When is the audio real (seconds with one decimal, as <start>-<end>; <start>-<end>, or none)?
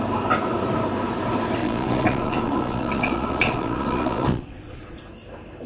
0.0-1.6; 5.0-5.7